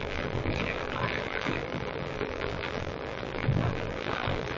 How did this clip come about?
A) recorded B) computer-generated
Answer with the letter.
B